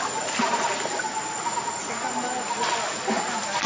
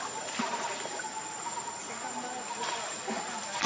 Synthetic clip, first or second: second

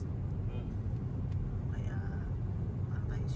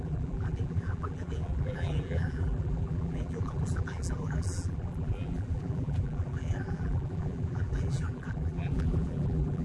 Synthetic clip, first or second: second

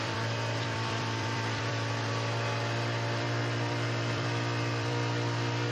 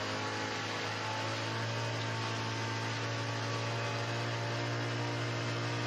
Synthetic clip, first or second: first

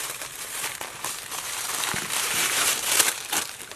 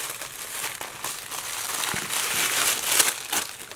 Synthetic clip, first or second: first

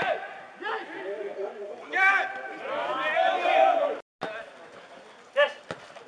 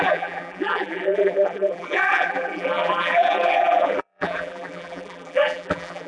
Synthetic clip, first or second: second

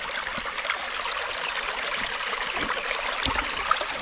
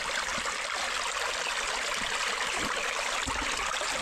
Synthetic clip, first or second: first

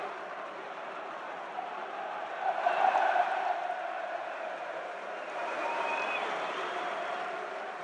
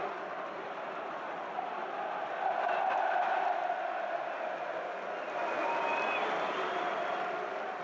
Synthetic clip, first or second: first